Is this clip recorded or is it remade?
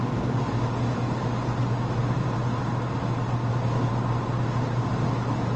recorded